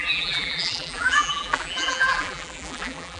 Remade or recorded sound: remade